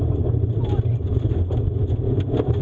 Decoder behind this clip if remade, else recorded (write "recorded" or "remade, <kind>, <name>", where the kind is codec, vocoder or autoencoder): recorded